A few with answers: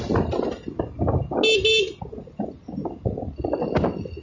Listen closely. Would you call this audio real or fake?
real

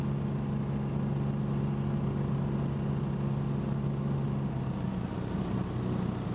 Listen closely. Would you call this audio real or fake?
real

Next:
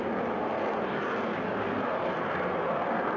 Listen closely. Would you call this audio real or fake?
real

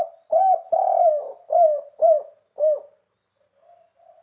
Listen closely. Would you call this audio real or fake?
real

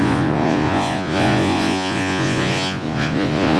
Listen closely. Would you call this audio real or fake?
fake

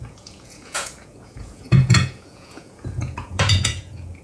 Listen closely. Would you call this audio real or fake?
fake